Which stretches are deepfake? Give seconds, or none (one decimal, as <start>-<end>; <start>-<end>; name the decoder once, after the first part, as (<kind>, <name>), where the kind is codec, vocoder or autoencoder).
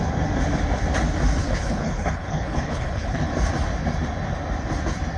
1.4-3.3 (codec, HILCodec)